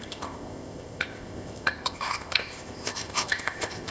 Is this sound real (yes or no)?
no